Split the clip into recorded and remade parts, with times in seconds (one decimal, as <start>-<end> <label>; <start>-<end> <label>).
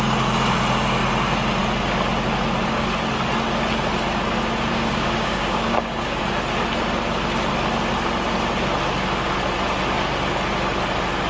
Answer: 0.0-4.7 recorded; 4.7-6.2 remade; 6.2-11.3 recorded